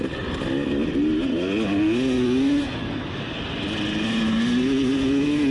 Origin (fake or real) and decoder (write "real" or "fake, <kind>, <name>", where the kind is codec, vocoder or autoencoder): real